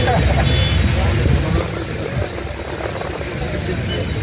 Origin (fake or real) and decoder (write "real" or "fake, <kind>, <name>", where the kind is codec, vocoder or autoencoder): real